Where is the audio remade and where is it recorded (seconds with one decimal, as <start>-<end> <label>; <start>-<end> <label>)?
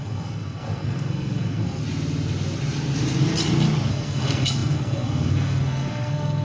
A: 0.0-1.8 remade; 1.8-3.9 recorded; 3.9-6.4 remade